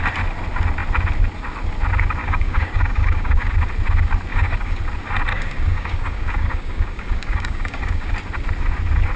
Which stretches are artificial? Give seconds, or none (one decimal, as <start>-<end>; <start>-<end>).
2.2-3.5; 4.3-4.8; 5.3-8.1